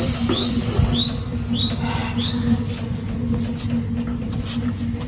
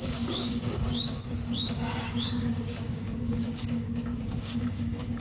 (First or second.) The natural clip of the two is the first